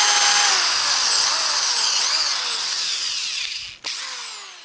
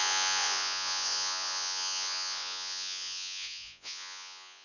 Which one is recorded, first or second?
first